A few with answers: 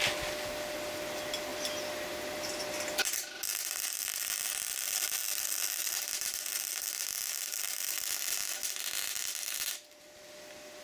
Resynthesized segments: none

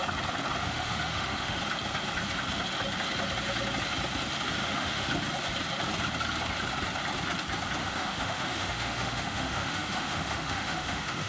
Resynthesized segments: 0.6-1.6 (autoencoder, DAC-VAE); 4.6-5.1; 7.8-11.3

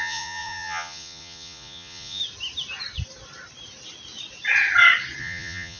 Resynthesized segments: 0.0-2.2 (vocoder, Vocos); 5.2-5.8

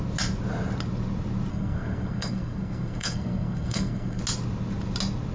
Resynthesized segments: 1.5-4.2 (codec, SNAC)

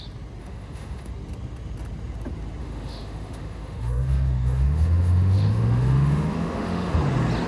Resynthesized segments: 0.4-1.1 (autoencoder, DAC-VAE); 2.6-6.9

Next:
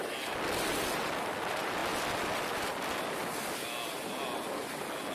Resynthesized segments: none

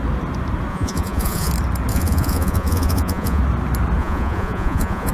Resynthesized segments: 0.7-1.5 (vocoder, Vocos); 1.9-3.4; 4.0-5.1